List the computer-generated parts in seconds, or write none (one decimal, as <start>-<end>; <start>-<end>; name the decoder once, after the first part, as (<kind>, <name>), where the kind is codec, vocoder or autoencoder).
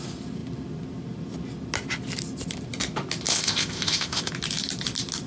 3.3-4.3 (codec, ZipCodec)